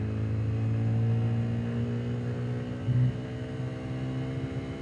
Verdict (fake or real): real